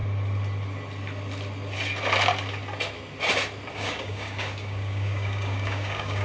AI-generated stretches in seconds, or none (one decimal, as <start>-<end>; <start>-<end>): 3.7-6.2